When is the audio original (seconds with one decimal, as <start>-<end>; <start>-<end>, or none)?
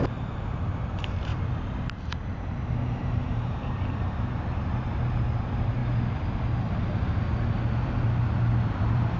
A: 1.3-2.0; 5.8-7.8